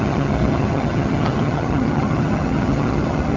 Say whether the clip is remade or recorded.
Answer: remade